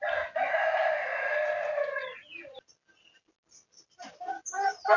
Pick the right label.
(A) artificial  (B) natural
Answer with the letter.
B